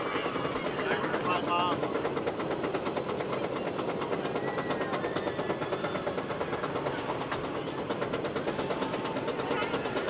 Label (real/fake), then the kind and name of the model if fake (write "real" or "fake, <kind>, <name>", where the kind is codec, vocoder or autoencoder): real